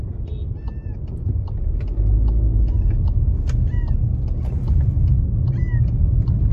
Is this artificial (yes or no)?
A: no